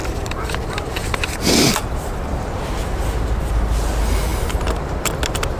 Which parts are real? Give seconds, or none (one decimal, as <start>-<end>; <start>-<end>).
0.0-5.6